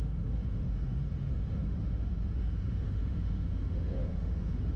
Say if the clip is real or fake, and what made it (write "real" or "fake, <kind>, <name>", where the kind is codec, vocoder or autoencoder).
fake, autoencoder, DAC-VAE